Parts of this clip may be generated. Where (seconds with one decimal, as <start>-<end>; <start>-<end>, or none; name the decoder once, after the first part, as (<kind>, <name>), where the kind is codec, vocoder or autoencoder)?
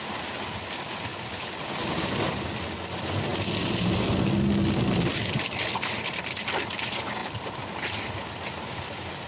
1.1-2.2 (vocoder, BigVGAN v2); 5.1-6.1; 7.2-9.3